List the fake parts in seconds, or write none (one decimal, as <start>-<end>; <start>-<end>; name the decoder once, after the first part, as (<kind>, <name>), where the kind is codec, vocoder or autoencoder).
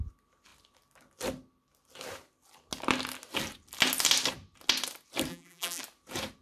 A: 5.3-5.8 (vocoder, BigVGAN v2)